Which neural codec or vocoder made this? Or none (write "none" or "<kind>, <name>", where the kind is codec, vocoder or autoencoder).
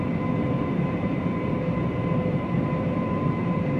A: vocoder, BigVGAN v2